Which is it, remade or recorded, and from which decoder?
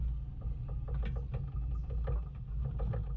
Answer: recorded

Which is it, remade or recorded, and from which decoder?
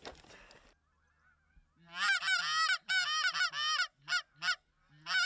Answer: recorded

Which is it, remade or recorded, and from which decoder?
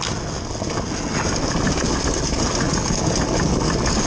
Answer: recorded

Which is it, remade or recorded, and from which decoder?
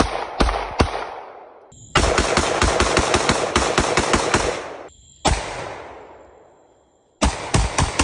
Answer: recorded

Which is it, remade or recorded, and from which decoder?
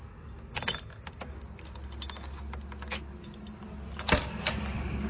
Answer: recorded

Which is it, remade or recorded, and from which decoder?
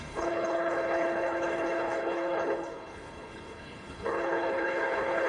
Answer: remade, codec, HILCodec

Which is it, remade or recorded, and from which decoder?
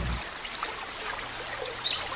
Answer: recorded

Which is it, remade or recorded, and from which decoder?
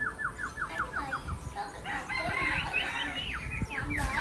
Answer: recorded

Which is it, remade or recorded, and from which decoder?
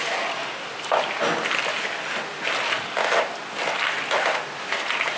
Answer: recorded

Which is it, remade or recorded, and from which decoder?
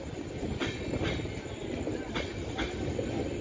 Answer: recorded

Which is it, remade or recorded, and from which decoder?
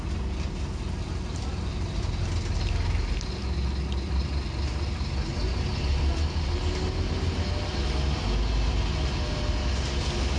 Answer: recorded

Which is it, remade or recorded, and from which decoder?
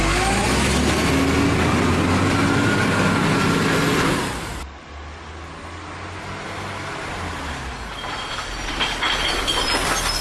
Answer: recorded